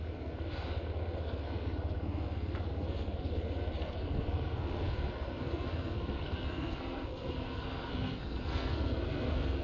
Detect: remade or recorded remade